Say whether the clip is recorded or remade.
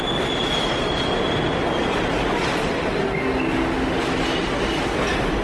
recorded